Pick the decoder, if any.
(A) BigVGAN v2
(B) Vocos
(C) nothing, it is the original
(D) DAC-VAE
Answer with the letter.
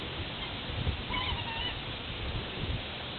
C